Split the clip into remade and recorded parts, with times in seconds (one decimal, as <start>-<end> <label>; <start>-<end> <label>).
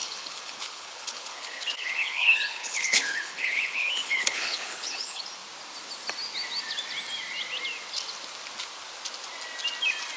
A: 0.0-5.2 remade; 5.2-10.2 recorded